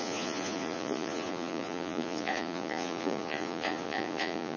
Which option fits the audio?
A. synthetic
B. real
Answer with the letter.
A